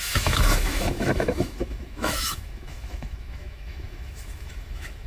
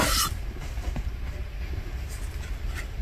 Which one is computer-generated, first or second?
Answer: first